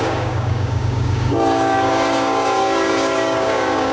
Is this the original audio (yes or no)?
no